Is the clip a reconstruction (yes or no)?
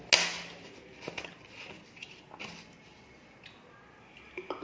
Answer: no